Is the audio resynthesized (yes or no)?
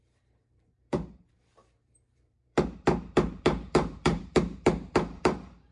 yes